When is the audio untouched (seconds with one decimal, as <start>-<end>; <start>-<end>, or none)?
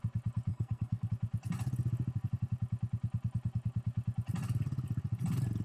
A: 0.0-0.5; 1.1-5.6